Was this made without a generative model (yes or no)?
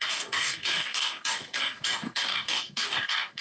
no